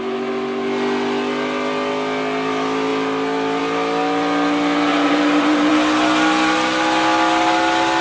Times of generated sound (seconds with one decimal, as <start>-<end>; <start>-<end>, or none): 4.9-5.7